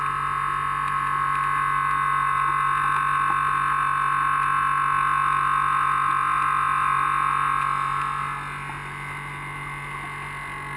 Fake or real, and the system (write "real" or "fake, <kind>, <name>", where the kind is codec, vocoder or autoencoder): real